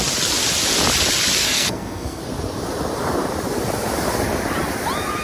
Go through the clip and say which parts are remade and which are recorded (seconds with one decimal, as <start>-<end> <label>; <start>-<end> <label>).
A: 0.0-1.4 recorded; 1.4-2.2 remade; 2.2-5.2 recorded